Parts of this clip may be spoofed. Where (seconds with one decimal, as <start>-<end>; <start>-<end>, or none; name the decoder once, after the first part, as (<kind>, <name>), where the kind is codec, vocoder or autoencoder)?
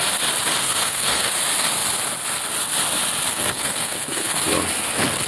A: 0.6-1.3 (codec, SNAC); 3.3-4.4